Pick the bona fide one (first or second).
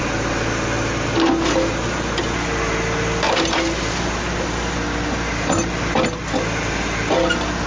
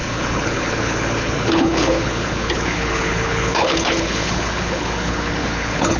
first